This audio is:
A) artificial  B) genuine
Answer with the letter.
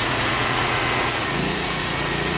A